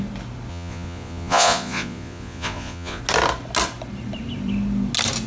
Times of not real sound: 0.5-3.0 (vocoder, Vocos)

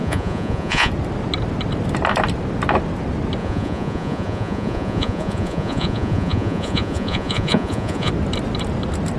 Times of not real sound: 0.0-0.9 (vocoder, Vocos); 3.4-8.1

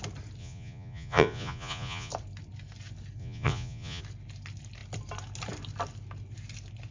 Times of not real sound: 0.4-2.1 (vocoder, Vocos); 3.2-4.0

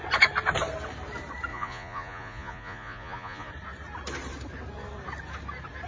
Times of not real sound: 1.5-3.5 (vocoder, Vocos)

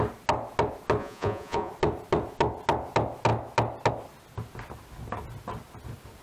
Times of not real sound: 1.0-1.7 (vocoder, Vocos)

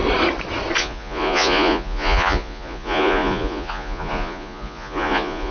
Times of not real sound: 0.8-5.5 (vocoder, Vocos)